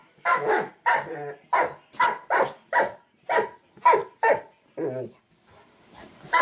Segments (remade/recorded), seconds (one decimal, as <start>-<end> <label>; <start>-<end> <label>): 0.0-0.7 remade; 0.7-6.4 recorded